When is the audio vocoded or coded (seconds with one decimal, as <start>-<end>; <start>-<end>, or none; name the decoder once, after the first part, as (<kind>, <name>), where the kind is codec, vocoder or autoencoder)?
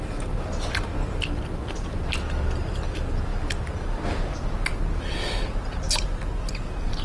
none